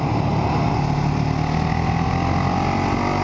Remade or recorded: recorded